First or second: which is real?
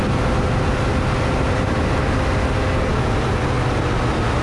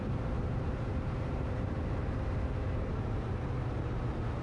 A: first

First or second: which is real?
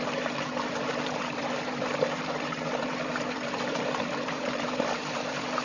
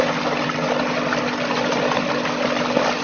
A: second